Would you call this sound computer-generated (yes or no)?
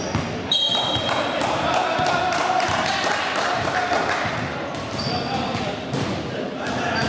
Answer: no